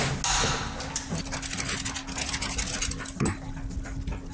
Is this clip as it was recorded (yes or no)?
yes